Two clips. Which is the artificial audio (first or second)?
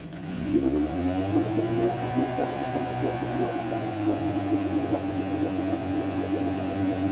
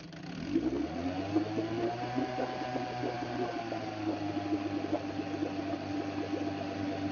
first